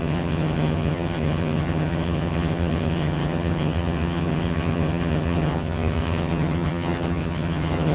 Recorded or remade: remade